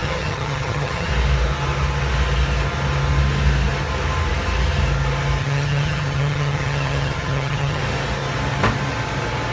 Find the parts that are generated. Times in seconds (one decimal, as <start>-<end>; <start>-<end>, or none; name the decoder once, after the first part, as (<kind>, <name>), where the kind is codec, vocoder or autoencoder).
0.0-1.1 (vocoder, HiFi-GAN); 5.4-7.8